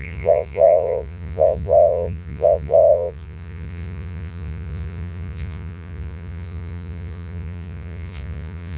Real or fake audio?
fake